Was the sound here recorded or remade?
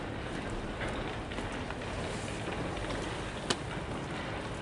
recorded